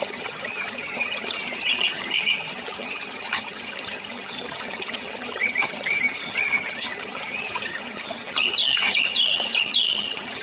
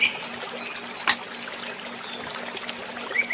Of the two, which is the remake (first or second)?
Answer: first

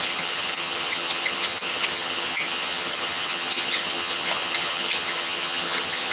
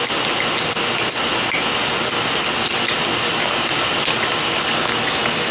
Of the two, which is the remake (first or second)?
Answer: first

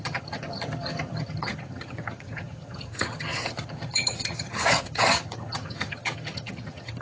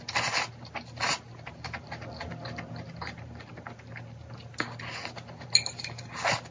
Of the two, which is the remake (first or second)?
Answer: first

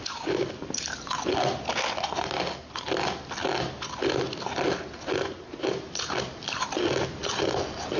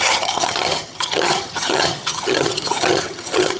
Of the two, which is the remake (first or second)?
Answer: second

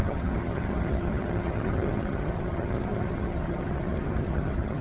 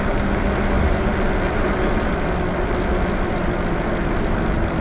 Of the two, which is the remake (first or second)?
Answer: first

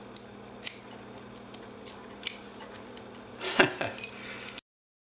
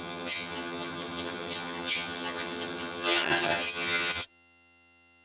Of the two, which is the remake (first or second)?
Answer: second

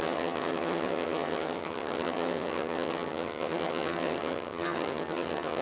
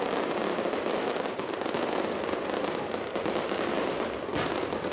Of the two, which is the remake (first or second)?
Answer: first